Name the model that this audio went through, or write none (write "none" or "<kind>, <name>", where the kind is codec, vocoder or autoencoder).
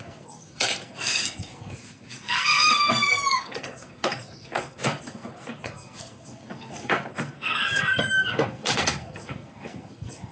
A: codec, SNAC